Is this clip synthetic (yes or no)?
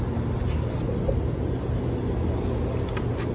no